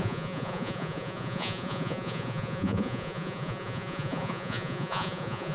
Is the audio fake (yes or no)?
yes